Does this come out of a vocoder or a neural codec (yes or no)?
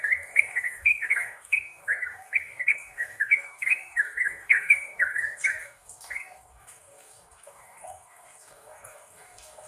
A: yes